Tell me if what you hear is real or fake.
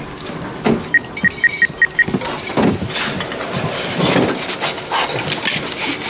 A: real